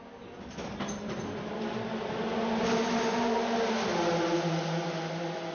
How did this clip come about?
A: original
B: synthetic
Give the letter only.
A